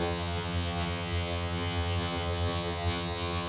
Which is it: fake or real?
fake